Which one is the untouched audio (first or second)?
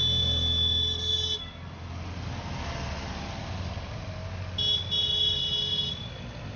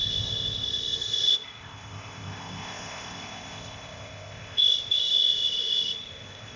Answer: first